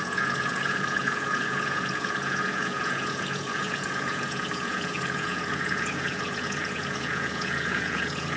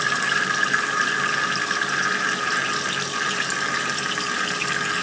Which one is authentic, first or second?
second